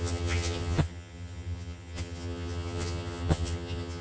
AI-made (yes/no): yes